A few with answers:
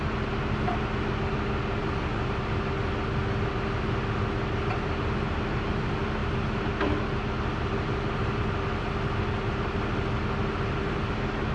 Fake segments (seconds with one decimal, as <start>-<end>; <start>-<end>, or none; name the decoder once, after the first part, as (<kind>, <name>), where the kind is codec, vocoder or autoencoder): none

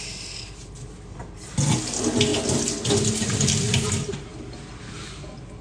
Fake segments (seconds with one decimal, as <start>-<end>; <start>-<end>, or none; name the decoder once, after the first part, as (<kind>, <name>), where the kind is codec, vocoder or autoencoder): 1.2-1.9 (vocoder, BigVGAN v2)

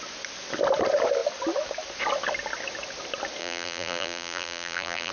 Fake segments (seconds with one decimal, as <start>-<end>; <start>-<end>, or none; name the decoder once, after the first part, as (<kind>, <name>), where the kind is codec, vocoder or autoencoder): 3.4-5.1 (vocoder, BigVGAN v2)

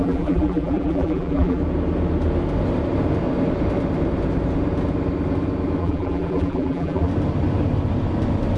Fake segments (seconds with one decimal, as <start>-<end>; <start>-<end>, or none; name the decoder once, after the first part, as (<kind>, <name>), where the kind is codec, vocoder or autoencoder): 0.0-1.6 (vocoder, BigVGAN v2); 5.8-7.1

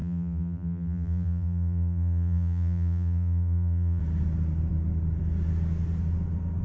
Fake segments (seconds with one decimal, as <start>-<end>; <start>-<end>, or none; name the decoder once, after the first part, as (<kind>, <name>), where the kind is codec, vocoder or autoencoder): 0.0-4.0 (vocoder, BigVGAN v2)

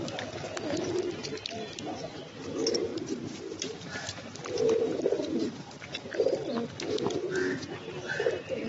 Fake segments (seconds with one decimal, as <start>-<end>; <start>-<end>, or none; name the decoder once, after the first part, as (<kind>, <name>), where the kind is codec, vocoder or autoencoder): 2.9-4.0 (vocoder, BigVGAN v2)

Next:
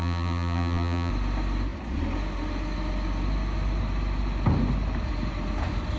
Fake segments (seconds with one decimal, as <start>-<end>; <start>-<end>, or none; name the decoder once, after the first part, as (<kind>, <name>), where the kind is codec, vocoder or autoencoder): 0.0-1.1 (vocoder, BigVGAN v2)